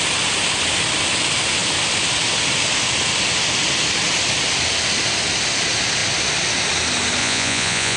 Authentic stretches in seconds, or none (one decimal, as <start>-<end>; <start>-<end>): 0.0-7.2